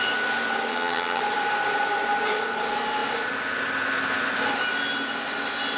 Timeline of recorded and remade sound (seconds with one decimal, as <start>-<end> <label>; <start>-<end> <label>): 0.0-0.7 recorded; 0.7-1.2 remade; 1.2-5.8 recorded